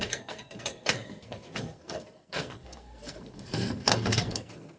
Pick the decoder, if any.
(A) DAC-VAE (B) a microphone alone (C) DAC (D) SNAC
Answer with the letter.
D